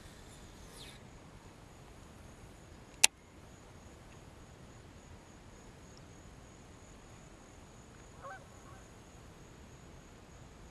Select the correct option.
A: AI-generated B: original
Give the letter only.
B